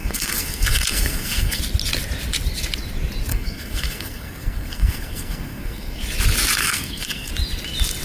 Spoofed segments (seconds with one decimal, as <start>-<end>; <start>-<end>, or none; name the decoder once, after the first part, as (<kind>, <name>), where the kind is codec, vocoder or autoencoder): 0.0-1.6 (codec, SNAC); 3.3-6.0; 6.6-7.3